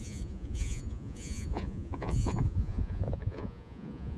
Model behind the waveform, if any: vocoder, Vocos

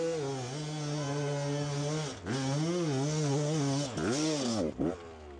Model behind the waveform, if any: none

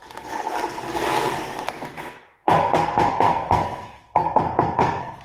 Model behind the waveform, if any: codec, SNAC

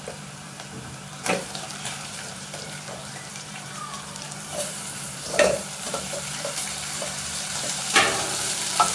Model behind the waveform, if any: vocoder, BigVGAN v2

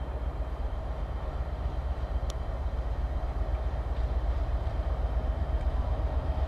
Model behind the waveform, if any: vocoder, BigVGAN v2